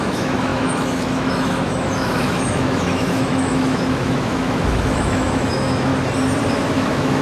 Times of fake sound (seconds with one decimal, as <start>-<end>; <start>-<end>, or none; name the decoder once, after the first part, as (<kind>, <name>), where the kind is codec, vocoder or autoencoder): 0.0-5.9 (autoencoder, DAC-VAE); 6.5-7.2